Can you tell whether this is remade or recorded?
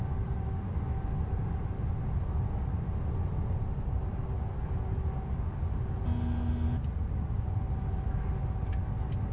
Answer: recorded